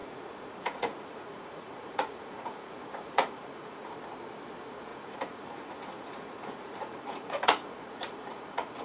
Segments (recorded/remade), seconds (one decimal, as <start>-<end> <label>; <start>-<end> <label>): 0.0-3.9 remade; 3.9-4.9 recorded; 4.9-8.8 remade